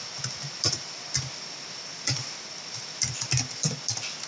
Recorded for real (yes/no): yes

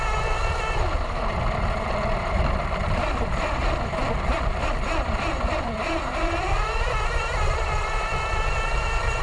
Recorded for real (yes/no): no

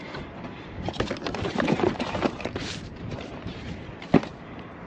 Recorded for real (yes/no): no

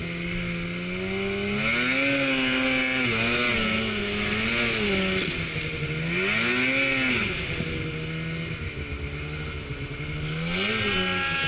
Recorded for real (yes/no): yes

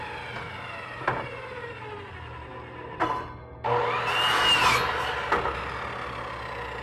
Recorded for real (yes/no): yes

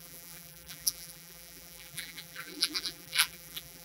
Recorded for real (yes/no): no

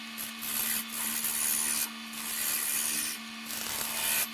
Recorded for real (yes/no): yes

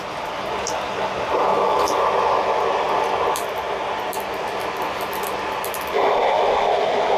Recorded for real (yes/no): yes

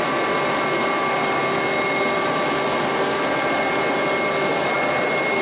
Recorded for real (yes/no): yes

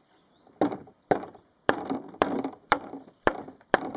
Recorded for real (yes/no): no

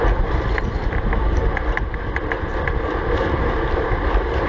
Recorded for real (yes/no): no